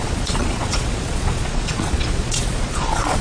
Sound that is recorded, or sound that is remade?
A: remade